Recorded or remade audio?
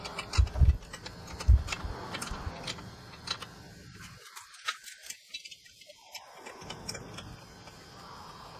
recorded